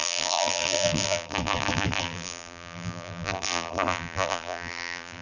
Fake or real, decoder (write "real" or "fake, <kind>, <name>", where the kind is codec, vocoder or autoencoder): fake, vocoder, BigVGAN v2